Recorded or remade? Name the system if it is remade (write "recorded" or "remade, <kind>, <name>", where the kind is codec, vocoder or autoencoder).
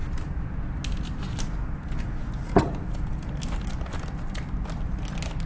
recorded